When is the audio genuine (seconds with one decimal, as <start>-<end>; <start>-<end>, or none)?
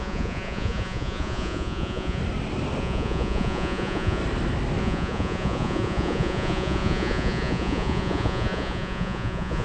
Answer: 2.2-2.8; 4.2-4.8